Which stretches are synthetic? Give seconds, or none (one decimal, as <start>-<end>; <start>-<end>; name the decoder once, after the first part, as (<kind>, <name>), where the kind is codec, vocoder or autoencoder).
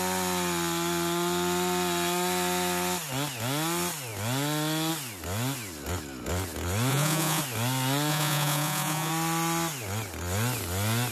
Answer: 6.9-7.4 (vocoder, Vocos); 8.1-9.1